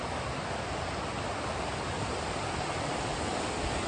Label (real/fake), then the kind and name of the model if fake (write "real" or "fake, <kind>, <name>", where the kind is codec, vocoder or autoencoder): real